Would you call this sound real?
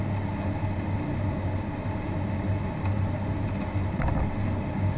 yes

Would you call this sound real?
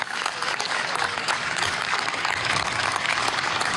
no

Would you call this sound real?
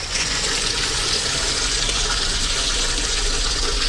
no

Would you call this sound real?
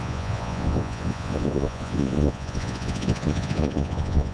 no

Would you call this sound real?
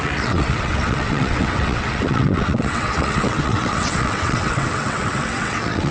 no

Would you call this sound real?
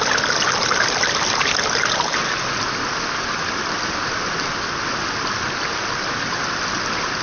yes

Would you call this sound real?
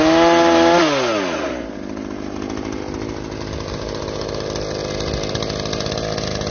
yes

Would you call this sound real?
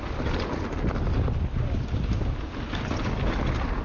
yes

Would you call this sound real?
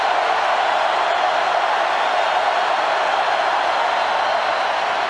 yes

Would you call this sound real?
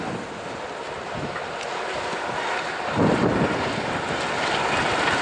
yes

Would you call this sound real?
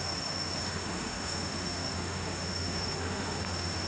no